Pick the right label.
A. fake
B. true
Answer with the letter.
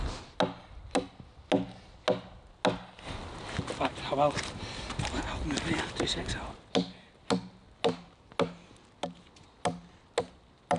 B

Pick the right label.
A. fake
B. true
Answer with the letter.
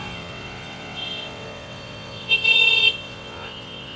A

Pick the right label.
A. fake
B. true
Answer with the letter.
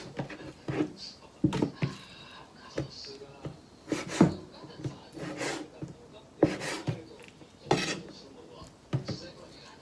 B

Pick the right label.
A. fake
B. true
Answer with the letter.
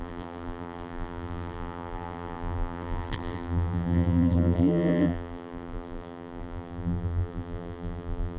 A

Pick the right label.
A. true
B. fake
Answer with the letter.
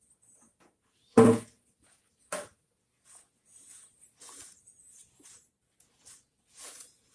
B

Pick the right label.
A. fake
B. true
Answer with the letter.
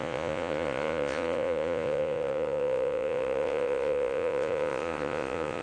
A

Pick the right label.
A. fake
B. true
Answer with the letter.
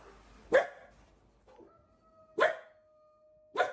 B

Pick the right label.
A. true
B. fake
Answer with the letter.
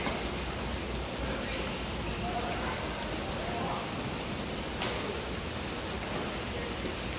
A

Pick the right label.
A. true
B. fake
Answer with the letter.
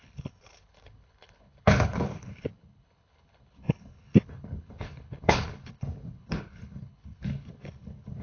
B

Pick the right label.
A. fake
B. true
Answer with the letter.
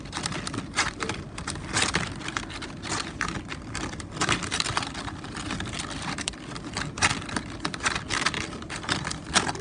A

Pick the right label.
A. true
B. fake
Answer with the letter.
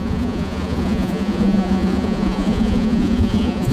B